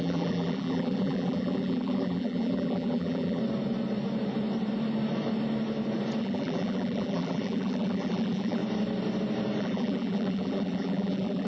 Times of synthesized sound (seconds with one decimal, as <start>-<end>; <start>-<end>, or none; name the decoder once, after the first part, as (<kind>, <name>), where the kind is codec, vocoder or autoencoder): 0.0-3.4 (vocoder, BigVGAN v2); 6.2-8.6; 9.6-11.5